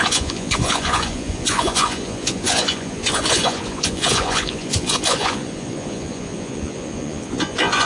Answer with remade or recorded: remade